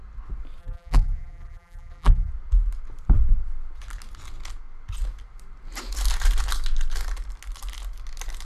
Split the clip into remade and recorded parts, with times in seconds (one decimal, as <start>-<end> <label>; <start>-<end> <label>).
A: 0.0-0.6 recorded; 0.6-2.3 remade; 2.3-8.4 recorded